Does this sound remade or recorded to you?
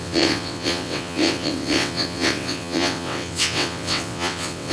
remade